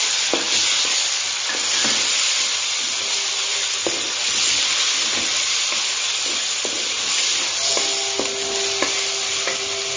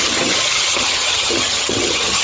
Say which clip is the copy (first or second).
second